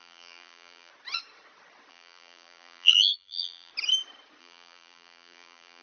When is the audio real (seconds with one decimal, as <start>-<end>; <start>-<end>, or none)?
0.9-1.9; 3.7-4.4